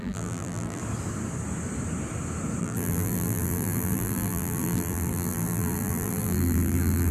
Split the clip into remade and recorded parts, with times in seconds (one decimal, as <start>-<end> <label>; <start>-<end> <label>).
0.0-0.8 remade; 0.8-2.6 recorded; 2.6-7.1 remade